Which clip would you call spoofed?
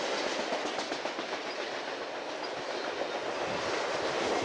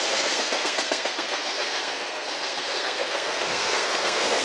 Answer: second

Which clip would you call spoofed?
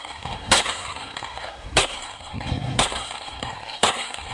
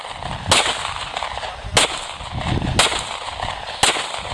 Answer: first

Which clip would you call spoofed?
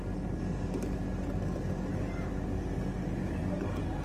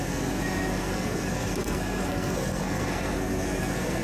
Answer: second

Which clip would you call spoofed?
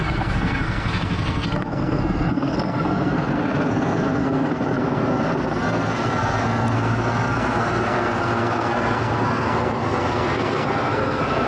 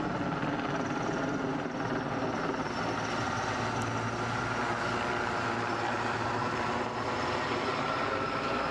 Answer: first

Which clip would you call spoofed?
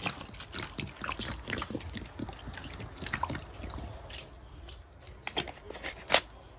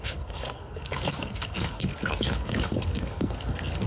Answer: second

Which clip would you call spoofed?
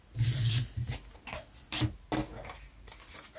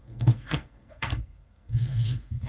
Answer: second